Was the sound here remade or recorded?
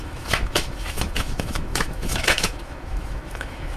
remade